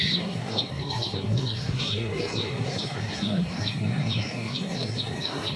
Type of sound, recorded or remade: remade